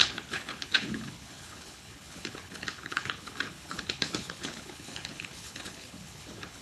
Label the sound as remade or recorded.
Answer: remade